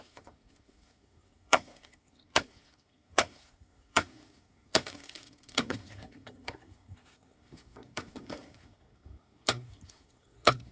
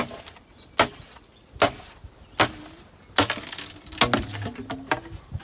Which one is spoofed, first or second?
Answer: first